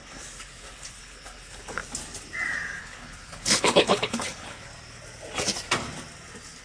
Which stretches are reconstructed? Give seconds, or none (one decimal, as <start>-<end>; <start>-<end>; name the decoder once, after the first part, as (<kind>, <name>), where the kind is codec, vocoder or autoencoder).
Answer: 0.0-1.8 (codec, HILCodec); 2.8-4.7